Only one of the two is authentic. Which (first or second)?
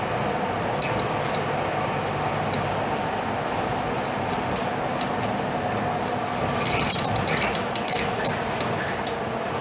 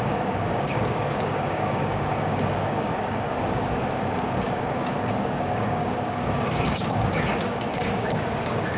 first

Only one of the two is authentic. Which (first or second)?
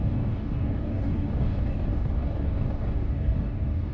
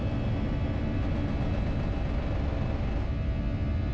second